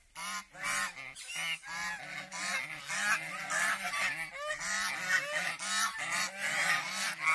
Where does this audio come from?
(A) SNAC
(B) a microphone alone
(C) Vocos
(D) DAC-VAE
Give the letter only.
B